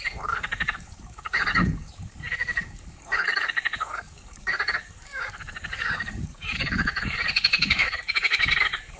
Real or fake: fake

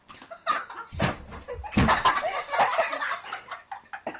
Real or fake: real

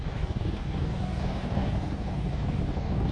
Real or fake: fake